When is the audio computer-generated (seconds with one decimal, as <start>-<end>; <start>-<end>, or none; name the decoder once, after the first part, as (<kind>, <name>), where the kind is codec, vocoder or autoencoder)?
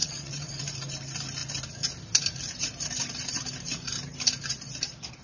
0.0-0.6 (vocoder, WaveNeXt)